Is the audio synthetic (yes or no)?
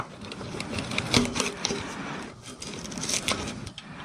yes